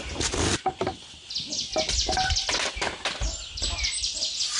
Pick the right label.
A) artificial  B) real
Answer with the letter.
B